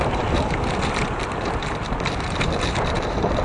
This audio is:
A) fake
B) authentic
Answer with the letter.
A